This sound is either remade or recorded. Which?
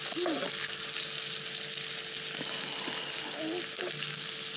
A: recorded